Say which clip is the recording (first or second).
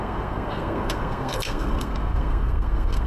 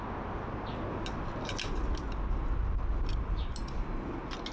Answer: second